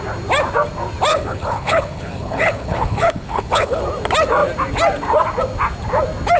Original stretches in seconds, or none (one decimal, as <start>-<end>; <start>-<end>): 0.0-1.1; 3.8-6.4